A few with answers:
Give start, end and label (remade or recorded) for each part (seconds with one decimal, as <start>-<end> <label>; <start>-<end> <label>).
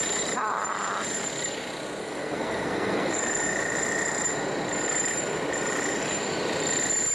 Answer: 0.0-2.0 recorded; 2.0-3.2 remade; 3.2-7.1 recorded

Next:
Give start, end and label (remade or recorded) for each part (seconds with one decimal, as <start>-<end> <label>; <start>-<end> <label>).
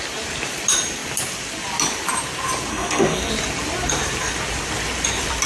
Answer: 0.0-2.7 recorded; 2.7-3.3 remade; 3.3-5.5 recorded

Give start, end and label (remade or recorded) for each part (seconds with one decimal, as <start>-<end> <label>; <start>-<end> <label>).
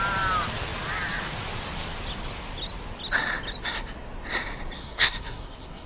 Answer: 0.0-4.8 recorded; 4.8-5.9 remade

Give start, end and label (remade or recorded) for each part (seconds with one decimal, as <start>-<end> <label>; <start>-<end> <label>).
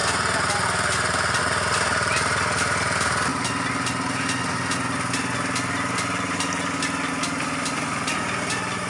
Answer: 0.0-8.9 recorded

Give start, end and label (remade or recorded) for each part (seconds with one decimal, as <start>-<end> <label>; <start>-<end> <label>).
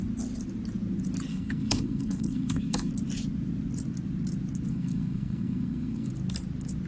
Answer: 0.0-1.3 recorded; 1.3-2.9 remade; 2.9-4.7 recorded; 4.7-6.1 remade; 6.1-6.9 recorded